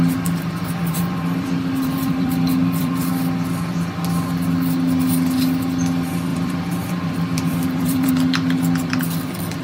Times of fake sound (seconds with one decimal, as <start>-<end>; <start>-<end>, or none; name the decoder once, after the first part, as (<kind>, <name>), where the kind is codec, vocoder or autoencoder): 0.8-3.1 (vocoder, BigVGAN v2); 6.3-8.1